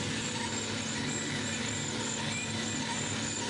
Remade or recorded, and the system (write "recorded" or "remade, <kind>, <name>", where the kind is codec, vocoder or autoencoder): recorded